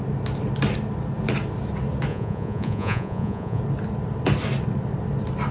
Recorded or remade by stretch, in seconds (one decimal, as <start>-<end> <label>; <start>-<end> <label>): 0.0-2.1 recorded; 2.1-3.6 remade; 3.6-5.5 recorded